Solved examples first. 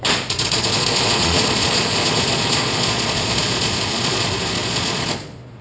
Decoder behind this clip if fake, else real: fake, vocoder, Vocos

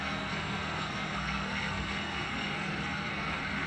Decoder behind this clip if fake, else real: fake, codec, SNAC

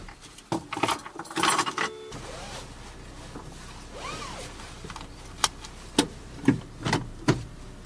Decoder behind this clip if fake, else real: real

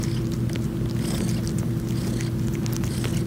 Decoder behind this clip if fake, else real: real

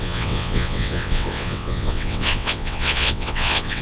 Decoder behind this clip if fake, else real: fake, vocoder, WaveNeXt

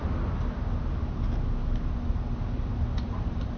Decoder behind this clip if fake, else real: real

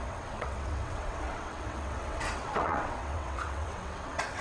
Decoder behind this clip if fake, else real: fake, vocoder, WaveNeXt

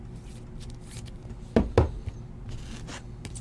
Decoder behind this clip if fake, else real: real